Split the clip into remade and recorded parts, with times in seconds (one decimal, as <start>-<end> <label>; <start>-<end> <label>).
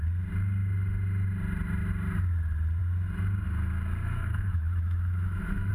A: 0.0-4.0 recorded; 4.0-5.7 remade